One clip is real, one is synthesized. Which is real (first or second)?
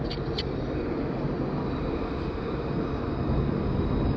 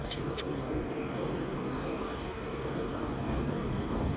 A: first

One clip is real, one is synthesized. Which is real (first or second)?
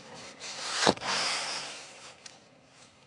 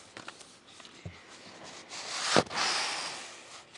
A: second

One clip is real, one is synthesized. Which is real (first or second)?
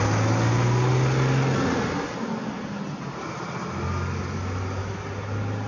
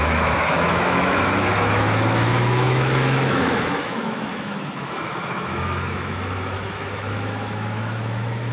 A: first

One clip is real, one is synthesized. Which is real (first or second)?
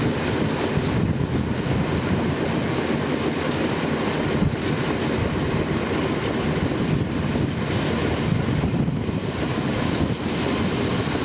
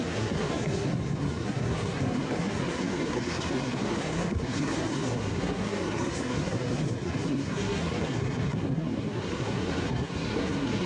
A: first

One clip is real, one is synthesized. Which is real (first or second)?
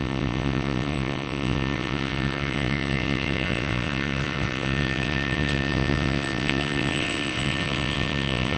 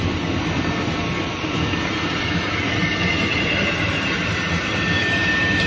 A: second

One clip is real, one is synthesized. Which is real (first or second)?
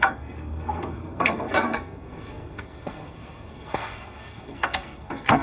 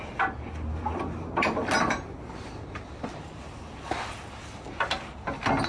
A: second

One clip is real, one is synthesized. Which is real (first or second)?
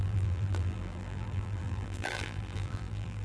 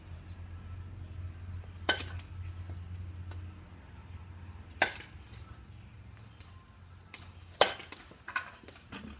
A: second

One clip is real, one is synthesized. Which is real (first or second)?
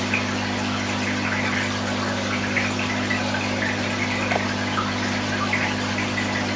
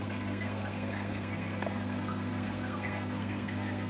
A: first